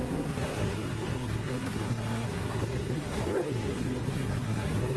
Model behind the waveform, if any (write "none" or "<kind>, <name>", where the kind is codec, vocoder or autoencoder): codec, SNAC